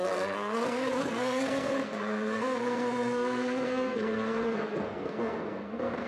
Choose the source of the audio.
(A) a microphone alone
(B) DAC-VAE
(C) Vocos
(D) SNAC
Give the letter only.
D